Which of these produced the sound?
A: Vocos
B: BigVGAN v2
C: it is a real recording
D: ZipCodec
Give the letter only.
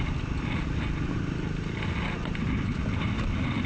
C